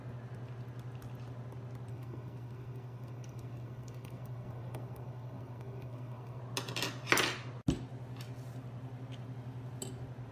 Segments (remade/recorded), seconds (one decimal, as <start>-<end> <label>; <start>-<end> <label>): 0.0-1.9 recorded; 1.9-6.4 remade; 6.4-10.3 recorded